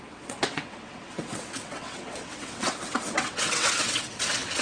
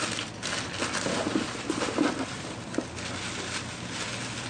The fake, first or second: first